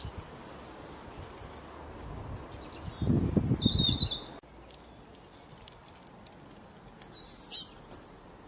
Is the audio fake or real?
real